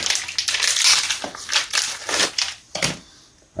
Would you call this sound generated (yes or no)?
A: no